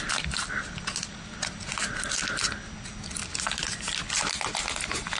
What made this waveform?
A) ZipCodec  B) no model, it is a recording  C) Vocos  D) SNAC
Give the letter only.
B